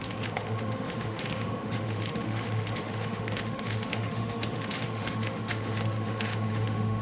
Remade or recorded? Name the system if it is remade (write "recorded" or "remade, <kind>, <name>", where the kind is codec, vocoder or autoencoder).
remade, autoencoder, DAC-VAE